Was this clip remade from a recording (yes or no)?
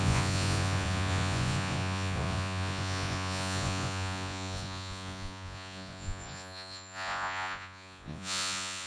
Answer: yes